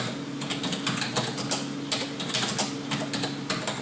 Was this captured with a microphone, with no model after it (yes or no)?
yes